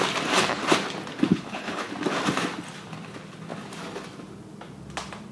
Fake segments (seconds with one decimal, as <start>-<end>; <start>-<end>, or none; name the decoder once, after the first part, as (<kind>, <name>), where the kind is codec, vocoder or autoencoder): 1.3-1.9 (codec, HILCodec)